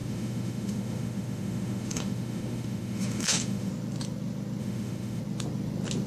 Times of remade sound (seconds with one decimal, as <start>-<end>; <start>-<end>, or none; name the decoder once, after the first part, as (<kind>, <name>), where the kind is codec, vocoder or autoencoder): 0.0-3.7 (autoencoder, DAC-VAE); 4.6-5.2